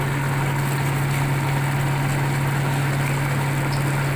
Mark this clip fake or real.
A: real